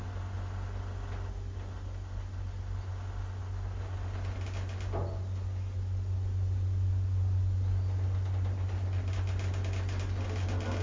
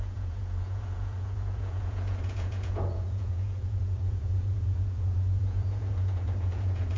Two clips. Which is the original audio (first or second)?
first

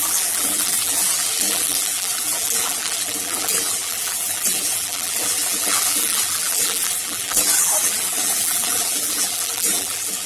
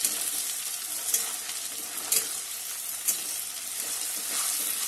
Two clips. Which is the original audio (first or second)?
second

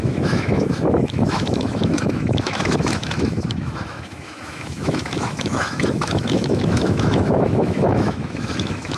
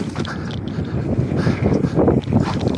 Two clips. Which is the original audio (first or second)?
second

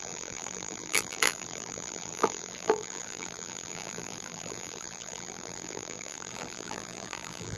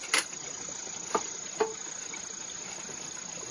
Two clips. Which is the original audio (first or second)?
second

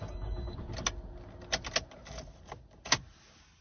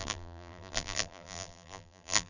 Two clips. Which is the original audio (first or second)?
first